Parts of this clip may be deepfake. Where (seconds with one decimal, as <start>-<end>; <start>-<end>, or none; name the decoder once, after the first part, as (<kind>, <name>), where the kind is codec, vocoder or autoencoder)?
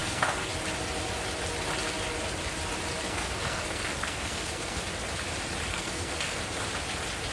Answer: 0.0-0.5 (codec, SNAC); 3.0-4.8; 5.7-6.4